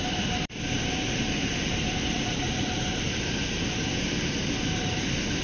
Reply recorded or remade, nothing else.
remade